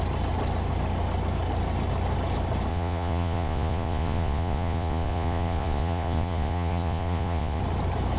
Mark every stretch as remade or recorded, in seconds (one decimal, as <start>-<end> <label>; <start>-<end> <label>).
0.0-2.7 recorded; 2.7-7.6 remade; 7.6-8.2 recorded